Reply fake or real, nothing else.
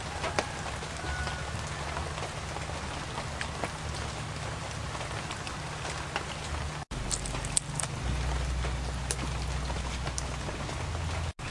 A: real